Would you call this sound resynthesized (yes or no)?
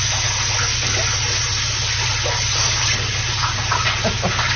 no